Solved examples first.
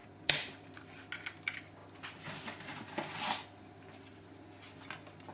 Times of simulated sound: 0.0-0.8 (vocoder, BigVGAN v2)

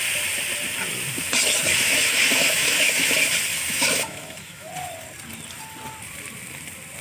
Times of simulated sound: 1.7-3.1 (autoencoder, DAC-VAE); 3.5-4.7

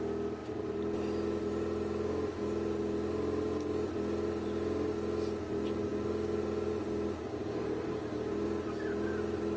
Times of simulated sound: none

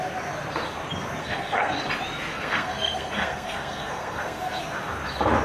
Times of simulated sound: 1.2-1.8 (codec, SNAC); 2.3-4.6

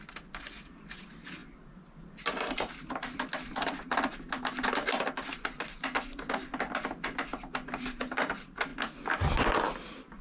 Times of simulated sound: none

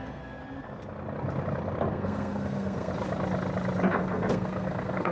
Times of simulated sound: 0.0-0.4 (codec, SNAC); 1.9-2.9; 3.9-5.1